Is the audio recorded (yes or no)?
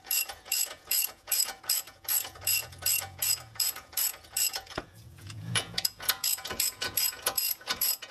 no